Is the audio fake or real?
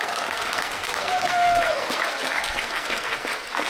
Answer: fake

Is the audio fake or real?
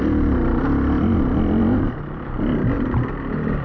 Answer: real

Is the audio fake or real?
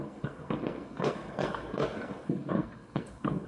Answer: fake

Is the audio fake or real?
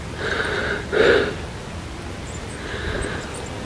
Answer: real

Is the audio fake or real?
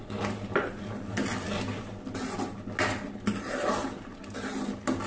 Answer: real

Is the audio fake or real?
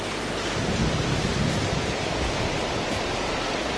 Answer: real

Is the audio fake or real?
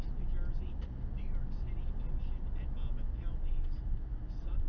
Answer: real